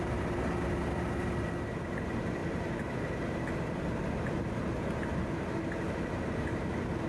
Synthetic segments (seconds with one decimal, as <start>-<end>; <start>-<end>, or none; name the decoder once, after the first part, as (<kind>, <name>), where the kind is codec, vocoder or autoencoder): none